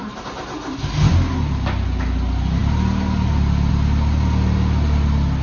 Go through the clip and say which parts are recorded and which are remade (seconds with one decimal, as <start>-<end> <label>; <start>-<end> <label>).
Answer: 0.0-5.4 recorded